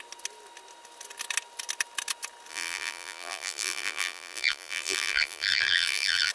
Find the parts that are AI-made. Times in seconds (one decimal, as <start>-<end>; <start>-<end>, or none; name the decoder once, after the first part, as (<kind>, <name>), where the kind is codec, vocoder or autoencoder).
2.5-6.3 (vocoder, BigVGAN v2)